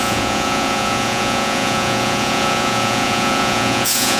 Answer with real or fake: fake